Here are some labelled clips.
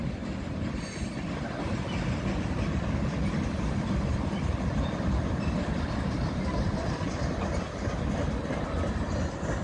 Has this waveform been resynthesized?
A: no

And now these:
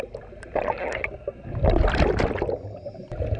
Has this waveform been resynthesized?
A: no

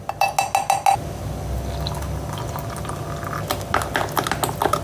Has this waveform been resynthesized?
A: no